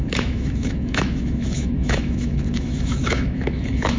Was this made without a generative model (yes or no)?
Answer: no